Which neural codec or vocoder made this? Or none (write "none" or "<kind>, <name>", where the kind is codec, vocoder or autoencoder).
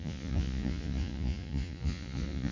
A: vocoder, Vocos